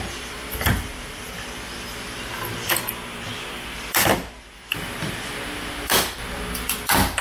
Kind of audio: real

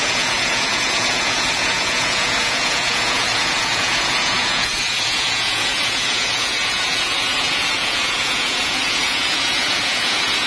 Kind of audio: fake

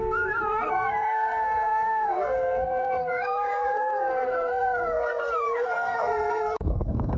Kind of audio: fake